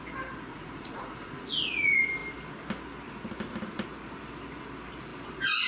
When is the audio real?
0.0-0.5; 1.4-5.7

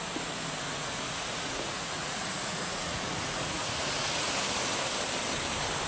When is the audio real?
0.0-0.8; 4.3-5.9

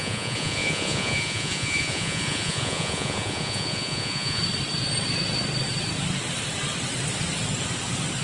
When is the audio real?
4.4-8.2

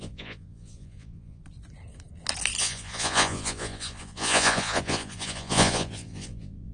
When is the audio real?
1.4-2.6

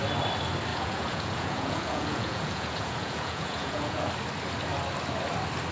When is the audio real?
0.0-0.7; 4.1-5.7

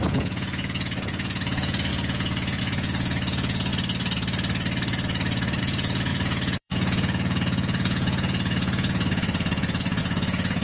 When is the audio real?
3.7-5.6